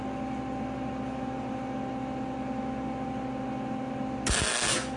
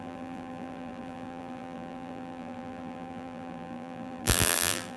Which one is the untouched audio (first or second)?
first